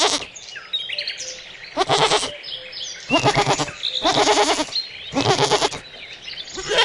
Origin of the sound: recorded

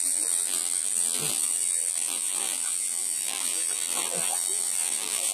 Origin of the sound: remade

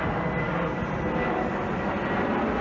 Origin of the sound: recorded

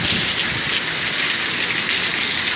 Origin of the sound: recorded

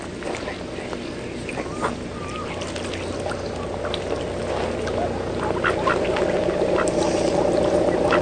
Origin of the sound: recorded